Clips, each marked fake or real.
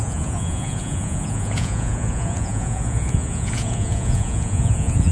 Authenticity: fake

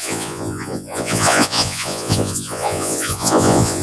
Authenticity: fake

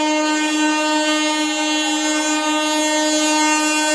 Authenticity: real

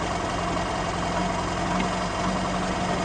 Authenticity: real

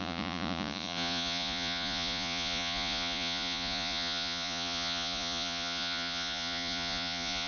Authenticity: fake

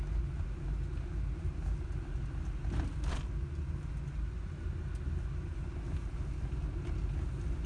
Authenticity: real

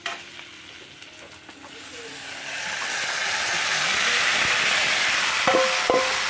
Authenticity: real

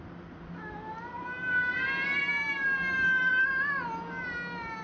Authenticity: real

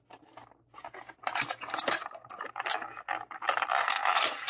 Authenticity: real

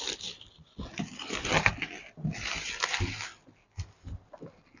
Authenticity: real